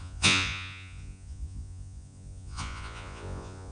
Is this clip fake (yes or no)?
yes